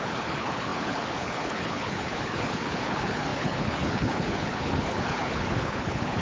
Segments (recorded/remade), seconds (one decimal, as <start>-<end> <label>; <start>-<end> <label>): 0.0-6.2 remade